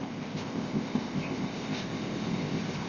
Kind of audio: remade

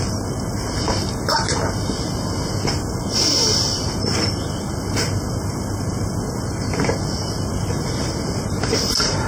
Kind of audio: recorded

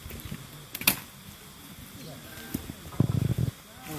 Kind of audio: recorded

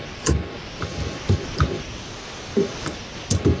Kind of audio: recorded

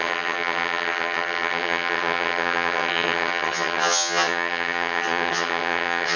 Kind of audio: remade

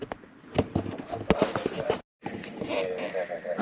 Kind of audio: recorded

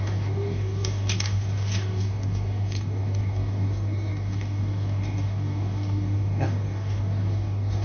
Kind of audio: remade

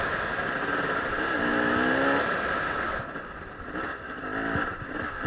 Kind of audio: recorded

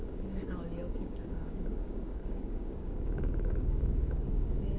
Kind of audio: remade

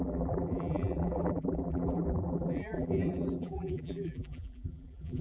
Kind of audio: remade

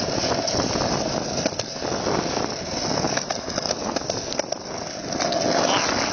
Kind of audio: recorded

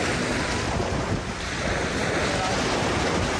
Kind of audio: recorded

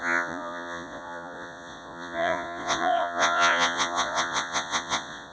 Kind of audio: remade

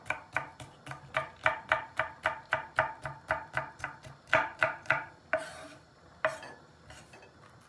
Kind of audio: recorded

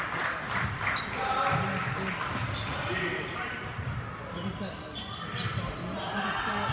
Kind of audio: recorded